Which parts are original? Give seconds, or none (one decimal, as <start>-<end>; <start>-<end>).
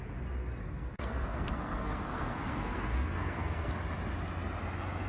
0.0-0.6; 3.7-5.1